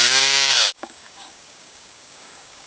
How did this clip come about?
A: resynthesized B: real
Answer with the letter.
A